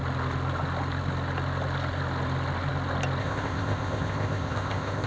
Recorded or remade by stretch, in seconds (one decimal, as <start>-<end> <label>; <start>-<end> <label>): 0.0-3.2 recorded; 3.2-5.1 remade